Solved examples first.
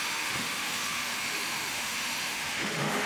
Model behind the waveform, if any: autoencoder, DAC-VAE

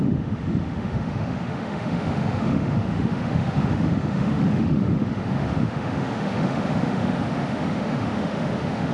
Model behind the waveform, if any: autoencoder, DAC-VAE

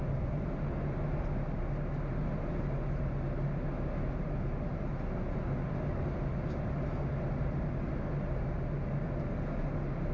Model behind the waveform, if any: none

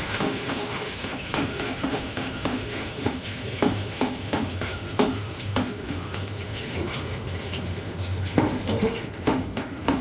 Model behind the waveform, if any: autoencoder, DAC-VAE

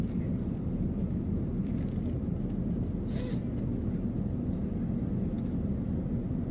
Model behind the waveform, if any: none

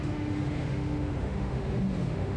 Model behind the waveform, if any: autoencoder, DAC-VAE